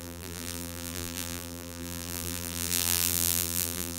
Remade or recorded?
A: remade